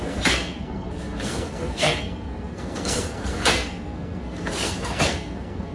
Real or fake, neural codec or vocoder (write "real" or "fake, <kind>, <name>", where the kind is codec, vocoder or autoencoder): fake, codec, SNAC